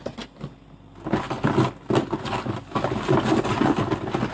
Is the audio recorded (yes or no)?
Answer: yes